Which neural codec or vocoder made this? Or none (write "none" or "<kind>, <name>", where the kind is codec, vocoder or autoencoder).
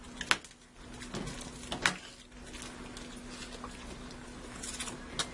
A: none